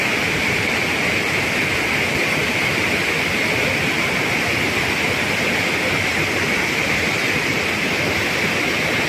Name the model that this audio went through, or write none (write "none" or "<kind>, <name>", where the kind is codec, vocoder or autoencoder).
none